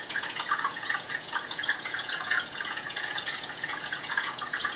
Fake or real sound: fake